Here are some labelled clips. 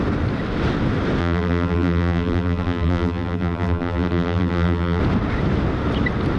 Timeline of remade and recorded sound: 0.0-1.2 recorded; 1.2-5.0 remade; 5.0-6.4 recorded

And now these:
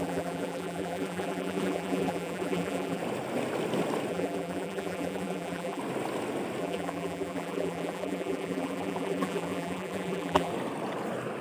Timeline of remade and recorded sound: 0.0-3.0 remade; 3.0-4.1 recorded; 4.1-5.8 remade; 5.8-6.6 recorded; 6.6-10.5 remade; 10.5-11.4 recorded

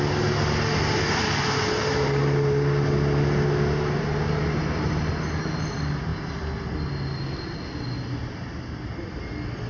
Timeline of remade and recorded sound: 0.0-4.6 recorded; 4.6-5.1 remade; 5.1-6.1 recorded; 6.1-6.6 remade; 6.6-8.2 recorded; 8.2-9.2 remade; 9.2-9.7 recorded

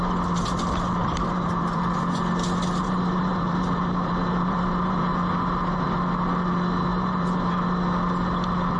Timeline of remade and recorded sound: 0.0-1.0 recorded; 1.0-1.8 remade; 1.8-2.8 recorded; 2.8-5.0 remade; 5.0-6.9 recorded; 6.9-7.5 remade; 7.5-8.8 recorded